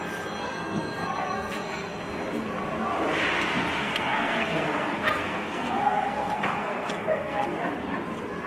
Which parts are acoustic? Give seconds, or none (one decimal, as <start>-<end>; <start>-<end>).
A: 0.0-0.4; 2.0-3.8; 7.7-8.5